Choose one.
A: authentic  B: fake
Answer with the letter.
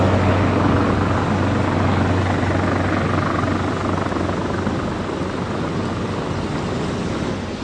A